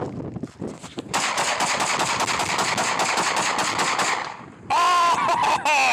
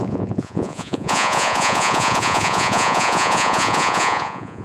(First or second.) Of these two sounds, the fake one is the second